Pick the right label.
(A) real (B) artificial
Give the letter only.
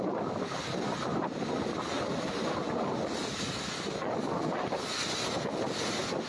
A